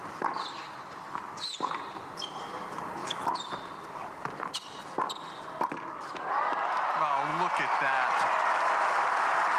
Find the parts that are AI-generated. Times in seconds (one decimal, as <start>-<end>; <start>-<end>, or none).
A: 0.0-1.0; 3.0-4.8